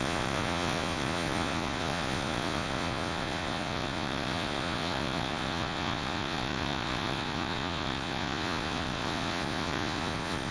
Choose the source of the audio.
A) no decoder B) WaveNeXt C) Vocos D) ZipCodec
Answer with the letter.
C